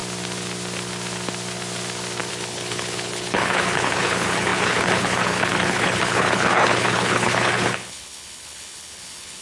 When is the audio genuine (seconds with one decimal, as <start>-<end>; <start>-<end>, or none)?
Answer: 0.0-2.3